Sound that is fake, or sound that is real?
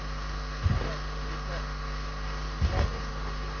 fake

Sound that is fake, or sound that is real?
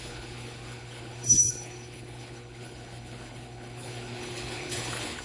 fake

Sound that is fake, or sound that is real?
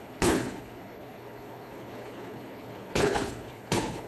fake